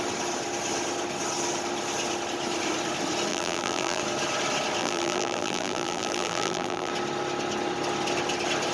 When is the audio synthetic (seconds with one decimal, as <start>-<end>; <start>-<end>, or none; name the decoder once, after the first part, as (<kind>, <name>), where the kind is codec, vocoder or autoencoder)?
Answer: 3.3-4.0 (vocoder, BigVGAN v2); 4.8-6.9